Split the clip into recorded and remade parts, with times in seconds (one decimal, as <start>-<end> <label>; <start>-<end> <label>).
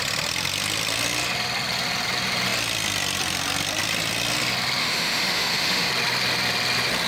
0.0-4.8 recorded; 4.8-5.9 remade; 5.9-7.1 recorded